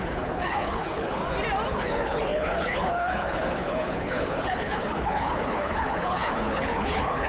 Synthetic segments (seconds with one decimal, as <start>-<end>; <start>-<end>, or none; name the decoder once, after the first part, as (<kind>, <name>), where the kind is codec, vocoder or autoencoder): 0.0-1.2 (codec, HILCodec); 1.7-7.3